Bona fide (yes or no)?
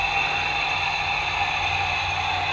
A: yes